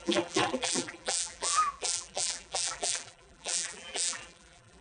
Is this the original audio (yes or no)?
no